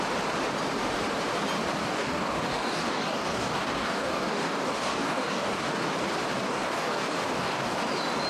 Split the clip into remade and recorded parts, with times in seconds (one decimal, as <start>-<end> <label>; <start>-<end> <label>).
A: 0.0-1.8 recorded; 1.8-5.9 remade; 5.9-6.4 recorded; 6.4-7.8 remade; 7.8-8.3 recorded